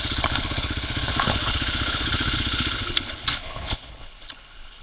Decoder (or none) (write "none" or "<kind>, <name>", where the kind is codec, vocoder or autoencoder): codec, HILCodec